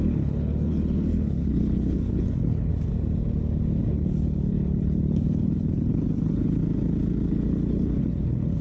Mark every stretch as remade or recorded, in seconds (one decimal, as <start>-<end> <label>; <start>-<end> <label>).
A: 0.0-2.7 remade; 2.7-3.9 recorded; 3.9-6.6 remade; 6.6-7.3 recorded; 7.3-8.6 remade